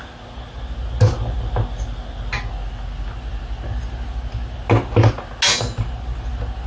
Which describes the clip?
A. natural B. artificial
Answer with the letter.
A